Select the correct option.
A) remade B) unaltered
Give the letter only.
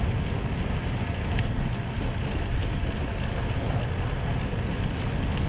B